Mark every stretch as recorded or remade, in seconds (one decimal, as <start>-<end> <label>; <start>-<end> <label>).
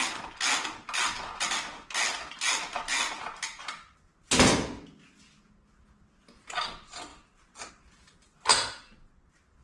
0.0-9.6 recorded